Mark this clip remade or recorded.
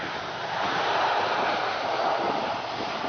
recorded